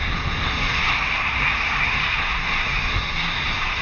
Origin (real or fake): fake